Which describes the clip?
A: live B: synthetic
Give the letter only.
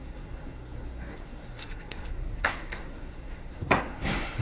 B